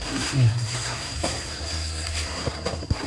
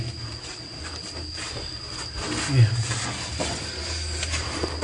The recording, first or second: second